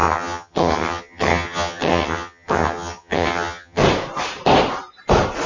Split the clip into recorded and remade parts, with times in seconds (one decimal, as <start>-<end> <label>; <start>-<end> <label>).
0.0-3.8 remade; 3.8-5.5 recorded